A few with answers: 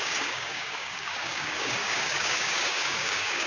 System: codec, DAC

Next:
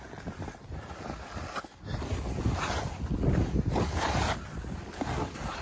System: none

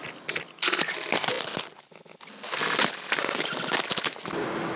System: none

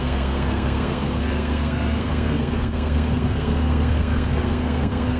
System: codec, SNAC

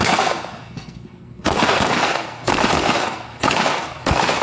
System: codec, SNAC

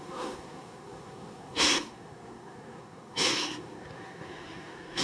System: codec, SNAC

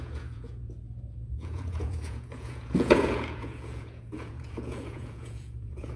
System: vocoder, Vocos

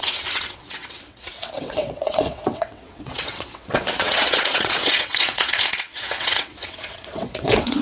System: vocoder, WaveNeXt